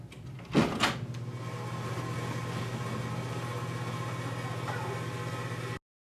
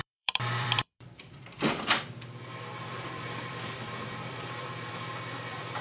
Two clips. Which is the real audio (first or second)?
first